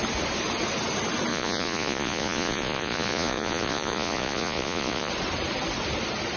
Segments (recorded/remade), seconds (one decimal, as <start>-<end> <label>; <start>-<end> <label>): 0.0-1.3 recorded; 1.3-5.1 remade; 5.1-6.4 recorded